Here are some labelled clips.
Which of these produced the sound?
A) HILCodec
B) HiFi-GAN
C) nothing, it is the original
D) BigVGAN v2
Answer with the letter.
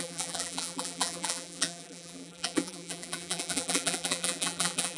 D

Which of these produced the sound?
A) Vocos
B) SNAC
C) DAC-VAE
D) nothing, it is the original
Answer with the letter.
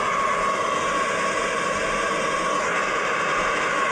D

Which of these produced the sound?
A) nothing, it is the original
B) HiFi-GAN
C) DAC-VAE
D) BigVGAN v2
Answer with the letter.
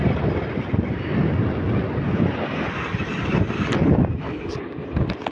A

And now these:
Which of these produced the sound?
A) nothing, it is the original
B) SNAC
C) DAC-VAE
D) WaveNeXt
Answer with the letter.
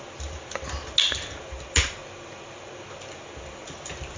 A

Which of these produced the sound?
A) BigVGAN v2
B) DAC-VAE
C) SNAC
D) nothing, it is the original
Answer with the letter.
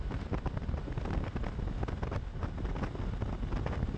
D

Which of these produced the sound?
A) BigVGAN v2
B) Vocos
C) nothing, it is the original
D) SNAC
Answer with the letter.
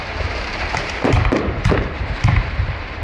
A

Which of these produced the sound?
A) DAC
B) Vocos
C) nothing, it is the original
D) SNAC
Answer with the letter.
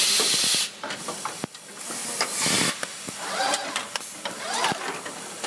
C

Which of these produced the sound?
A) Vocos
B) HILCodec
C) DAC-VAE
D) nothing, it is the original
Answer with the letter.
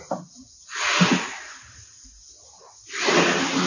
D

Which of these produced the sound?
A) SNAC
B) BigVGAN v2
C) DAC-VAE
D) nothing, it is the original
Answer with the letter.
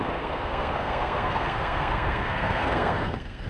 A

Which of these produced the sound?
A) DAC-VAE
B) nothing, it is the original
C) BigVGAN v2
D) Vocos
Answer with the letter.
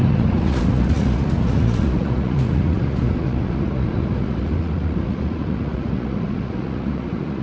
D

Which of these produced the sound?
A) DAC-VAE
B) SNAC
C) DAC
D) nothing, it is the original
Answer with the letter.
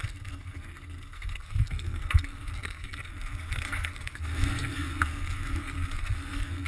B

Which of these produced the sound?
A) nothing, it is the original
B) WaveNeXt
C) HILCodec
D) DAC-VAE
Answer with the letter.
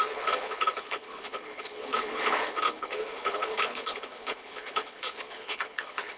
C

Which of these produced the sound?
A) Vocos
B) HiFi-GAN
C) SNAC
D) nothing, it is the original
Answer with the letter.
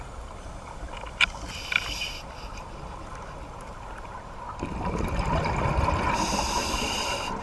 D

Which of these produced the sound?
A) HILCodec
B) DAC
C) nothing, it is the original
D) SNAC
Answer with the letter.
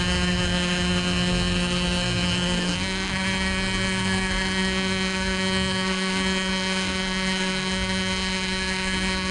D